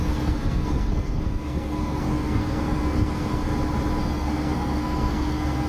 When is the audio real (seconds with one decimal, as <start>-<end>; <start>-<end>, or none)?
3.5-4.0